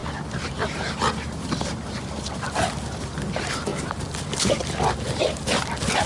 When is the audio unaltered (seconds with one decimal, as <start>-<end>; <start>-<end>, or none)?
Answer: 2.5-6.1